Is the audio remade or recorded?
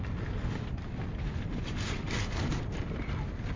recorded